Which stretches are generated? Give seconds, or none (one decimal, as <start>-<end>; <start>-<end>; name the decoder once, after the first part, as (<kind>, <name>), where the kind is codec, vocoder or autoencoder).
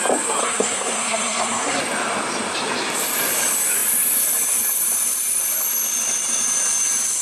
0.4-1.8 (codec, SNAC)